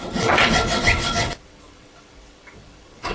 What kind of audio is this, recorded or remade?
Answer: remade